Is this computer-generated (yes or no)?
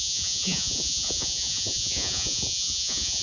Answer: yes